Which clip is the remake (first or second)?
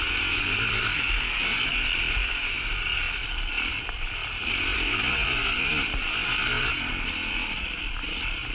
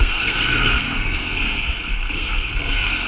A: second